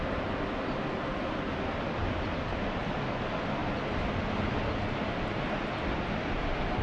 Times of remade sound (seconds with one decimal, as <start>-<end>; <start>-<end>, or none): none